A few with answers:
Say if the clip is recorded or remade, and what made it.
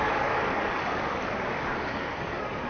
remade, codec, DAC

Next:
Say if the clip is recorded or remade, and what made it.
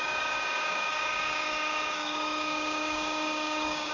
remade, codec, DAC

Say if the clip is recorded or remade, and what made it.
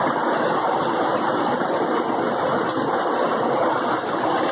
recorded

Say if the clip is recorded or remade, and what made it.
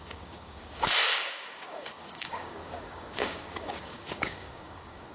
remade, codec, DAC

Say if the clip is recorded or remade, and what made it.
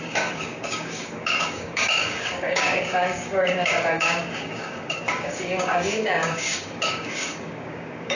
remade, codec, DAC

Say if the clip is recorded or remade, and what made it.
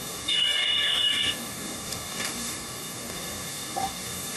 remade, codec, DAC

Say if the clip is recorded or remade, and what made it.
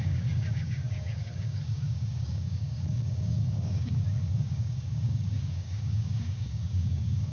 remade, codec, DAC